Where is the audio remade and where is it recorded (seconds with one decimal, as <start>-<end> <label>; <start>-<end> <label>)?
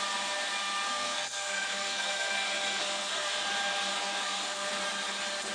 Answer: 0.0-0.9 recorded; 0.9-3.4 remade; 3.4-3.9 recorded; 3.9-4.7 remade; 4.7-5.5 recorded